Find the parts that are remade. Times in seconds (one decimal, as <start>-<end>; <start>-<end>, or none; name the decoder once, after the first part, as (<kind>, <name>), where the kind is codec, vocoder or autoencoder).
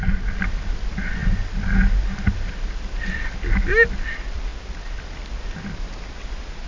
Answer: none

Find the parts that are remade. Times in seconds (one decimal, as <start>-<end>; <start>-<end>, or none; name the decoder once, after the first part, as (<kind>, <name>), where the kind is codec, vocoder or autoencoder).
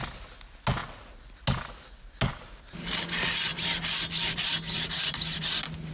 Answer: none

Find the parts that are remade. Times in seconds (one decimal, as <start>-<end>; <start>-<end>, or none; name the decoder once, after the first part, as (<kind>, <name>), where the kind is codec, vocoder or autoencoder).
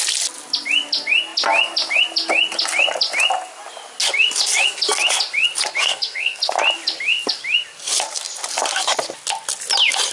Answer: 5.8-6.4 (codec, SNAC)